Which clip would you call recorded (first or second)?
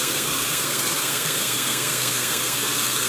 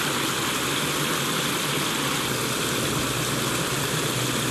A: second